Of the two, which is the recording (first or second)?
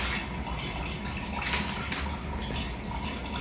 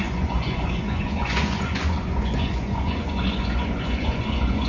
first